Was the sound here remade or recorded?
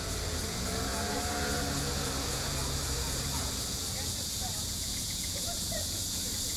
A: remade